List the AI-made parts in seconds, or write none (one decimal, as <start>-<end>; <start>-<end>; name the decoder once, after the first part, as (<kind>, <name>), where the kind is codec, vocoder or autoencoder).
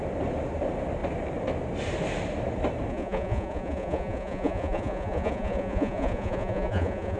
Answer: 2.9-7.2 (vocoder, Vocos)